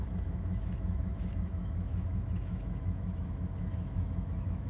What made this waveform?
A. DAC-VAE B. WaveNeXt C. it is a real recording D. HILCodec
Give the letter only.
A